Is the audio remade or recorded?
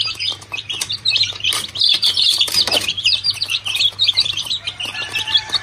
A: remade